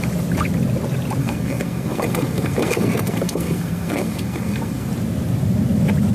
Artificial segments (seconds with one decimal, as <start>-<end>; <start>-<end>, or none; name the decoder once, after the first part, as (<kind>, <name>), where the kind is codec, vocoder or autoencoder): 1.2-4.9 (codec, SNAC)